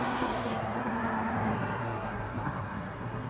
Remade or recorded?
remade